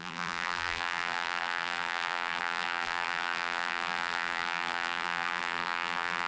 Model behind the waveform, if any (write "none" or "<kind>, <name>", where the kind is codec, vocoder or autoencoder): vocoder, BigVGAN v2